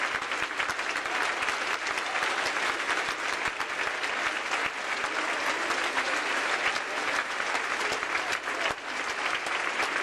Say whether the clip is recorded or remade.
recorded